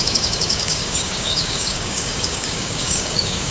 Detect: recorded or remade remade